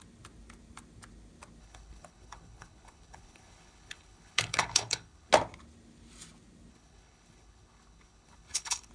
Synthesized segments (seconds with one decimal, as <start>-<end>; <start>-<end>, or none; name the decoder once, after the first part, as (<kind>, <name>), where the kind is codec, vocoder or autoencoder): 1.6-5.3 (codec, HILCodec); 6.7-8.9